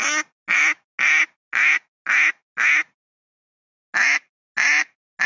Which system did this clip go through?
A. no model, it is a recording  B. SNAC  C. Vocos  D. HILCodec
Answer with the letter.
A